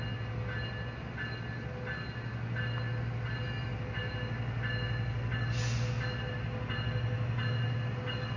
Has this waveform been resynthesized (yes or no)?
no